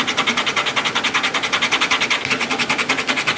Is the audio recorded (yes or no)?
yes